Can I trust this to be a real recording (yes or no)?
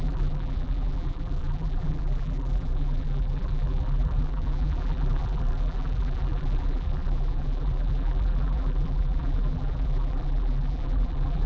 no